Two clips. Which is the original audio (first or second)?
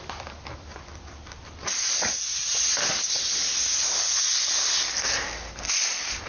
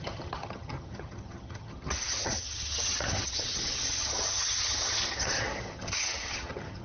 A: first